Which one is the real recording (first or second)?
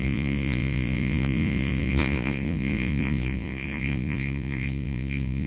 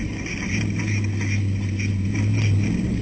second